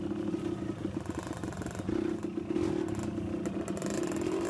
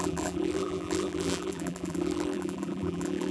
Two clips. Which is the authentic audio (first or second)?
first